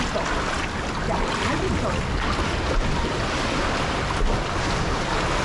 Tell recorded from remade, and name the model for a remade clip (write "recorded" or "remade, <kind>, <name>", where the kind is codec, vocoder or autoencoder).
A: recorded